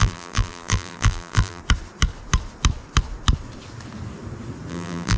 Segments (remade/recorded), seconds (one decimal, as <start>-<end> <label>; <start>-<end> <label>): 0.0-1.6 remade; 1.6-4.7 recorded; 4.7-5.2 remade